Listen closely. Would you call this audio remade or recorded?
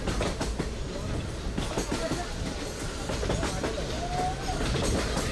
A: recorded